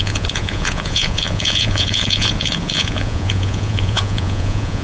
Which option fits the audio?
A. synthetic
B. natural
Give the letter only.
A